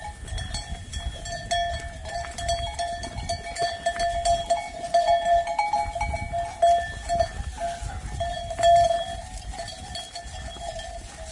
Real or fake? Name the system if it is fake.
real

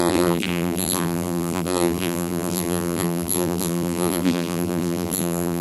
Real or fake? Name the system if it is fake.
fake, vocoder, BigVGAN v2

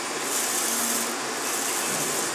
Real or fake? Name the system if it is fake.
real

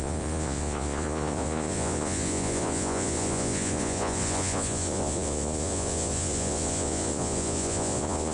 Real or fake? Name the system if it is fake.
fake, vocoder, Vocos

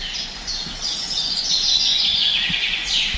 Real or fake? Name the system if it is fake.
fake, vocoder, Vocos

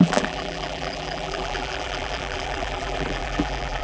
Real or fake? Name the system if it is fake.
fake, vocoder, BigVGAN v2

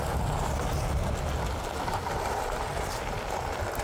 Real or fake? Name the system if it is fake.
real